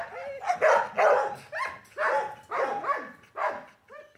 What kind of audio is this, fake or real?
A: real